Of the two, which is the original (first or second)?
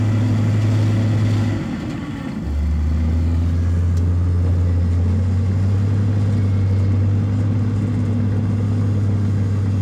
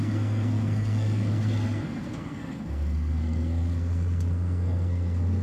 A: first